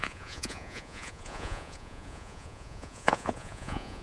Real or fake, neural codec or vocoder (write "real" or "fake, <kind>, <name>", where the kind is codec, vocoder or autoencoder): fake, vocoder, Vocos